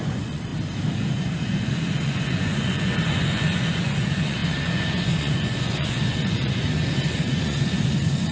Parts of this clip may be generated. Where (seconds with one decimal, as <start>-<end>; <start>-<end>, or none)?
0.0-0.5; 1.1-8.3